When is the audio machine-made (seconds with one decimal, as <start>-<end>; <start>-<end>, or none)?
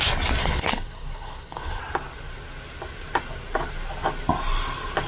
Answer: 0.4-1.8